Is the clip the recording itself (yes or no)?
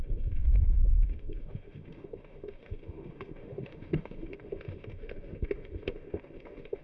no